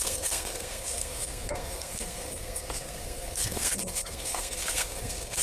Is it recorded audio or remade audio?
remade